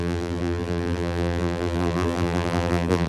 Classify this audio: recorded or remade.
remade